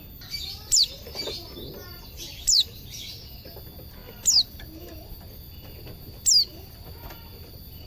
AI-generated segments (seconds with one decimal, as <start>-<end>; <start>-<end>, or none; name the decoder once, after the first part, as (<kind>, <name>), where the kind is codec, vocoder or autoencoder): none